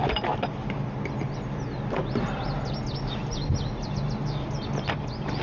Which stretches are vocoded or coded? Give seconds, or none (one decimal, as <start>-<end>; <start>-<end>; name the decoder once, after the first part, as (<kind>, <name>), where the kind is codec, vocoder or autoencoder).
none